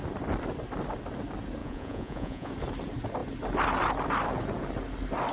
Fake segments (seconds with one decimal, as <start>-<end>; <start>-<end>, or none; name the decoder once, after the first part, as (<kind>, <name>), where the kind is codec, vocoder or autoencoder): 1.6-2.5 (vocoder, Vocos)